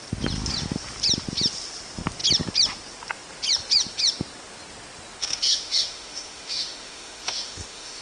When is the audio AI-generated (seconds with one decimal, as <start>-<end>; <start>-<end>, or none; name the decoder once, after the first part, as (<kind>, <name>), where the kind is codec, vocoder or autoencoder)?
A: 5.2-8.0 (autoencoder, DAC-VAE)